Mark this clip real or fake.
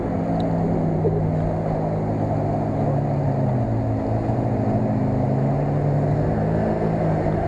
real